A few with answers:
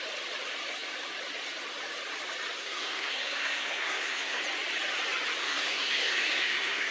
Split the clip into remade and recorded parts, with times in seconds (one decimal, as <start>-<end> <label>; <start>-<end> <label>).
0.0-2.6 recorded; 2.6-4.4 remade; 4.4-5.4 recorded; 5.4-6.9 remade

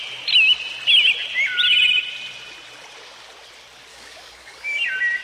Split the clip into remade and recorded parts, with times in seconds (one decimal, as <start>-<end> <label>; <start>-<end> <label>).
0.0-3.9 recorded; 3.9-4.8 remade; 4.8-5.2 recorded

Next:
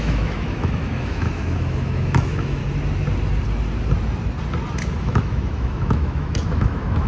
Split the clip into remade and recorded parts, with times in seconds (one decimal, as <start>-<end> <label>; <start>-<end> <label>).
0.0-2.6 remade; 2.6-5.0 recorded; 5.0-7.1 remade

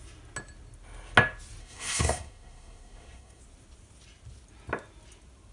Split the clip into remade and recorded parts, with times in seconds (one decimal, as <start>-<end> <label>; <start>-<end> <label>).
0.0-1.6 recorded; 1.6-3.4 remade; 3.4-5.5 recorded

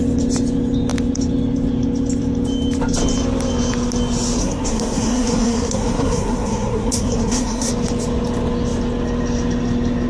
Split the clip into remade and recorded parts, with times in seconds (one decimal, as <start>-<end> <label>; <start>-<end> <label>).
0.0-4.4 recorded; 4.4-7.7 remade; 7.7-10.1 recorded

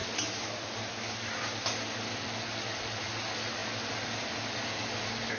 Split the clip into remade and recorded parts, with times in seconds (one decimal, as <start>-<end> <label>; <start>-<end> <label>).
0.0-5.4 recorded

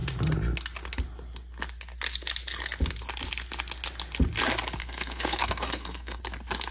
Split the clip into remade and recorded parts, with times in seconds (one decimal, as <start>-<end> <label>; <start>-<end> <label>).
0.0-4.8 recorded; 4.8-6.2 remade; 6.2-6.7 recorded